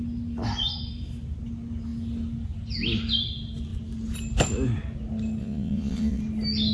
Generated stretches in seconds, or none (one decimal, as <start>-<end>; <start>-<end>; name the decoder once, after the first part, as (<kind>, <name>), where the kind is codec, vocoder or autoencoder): 5.4-6.2 (vocoder, Vocos)